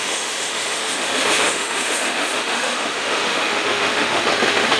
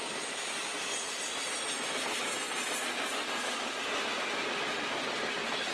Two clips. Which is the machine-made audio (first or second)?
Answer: first